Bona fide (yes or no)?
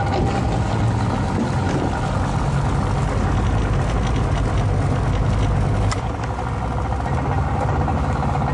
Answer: yes